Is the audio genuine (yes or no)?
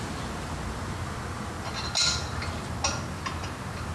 yes